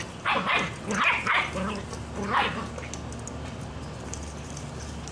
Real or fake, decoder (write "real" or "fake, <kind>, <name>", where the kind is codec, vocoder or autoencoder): real